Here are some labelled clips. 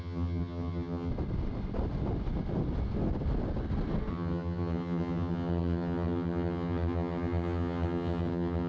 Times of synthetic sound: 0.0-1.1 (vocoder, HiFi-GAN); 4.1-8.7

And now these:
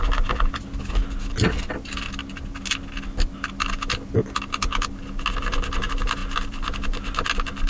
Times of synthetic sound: none

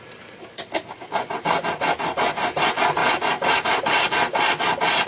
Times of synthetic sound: none

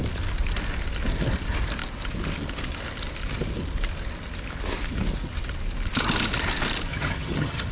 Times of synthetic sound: 6.9-7.7 (vocoder, HiFi-GAN)

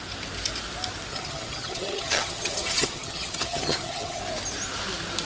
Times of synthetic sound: 1.1-4.2 (vocoder, HiFi-GAN)

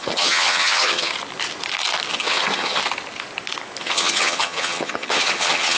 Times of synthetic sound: 0.0-1.1 (vocoder, HiFi-GAN); 2.1-2.8; 3.8-5.8

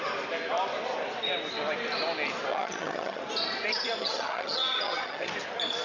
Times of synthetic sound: 2.5-3.2 (vocoder, HiFi-GAN); 4.0-5.3